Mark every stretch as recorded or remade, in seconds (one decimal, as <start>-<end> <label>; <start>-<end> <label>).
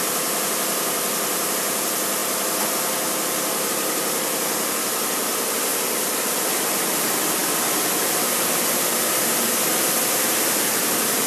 0.0-2.2 remade; 2.2-3.7 recorded; 3.7-11.3 remade